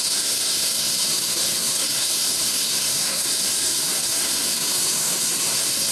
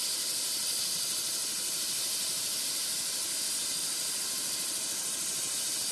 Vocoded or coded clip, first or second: first